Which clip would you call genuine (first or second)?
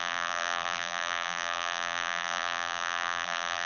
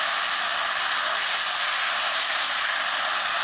second